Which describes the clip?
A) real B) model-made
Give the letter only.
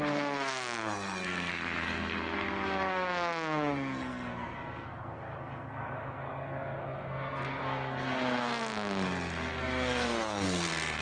B